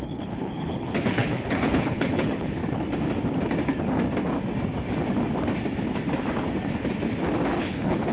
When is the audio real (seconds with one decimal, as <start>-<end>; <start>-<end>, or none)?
2.6-7.5